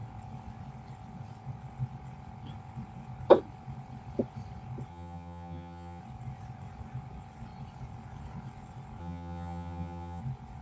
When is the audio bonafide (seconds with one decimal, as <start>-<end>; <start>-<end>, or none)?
0.0-4.9; 6.0-9.0; 10.2-10.6